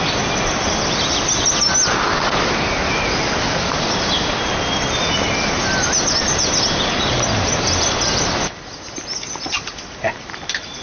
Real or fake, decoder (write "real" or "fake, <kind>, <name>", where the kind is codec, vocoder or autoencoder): real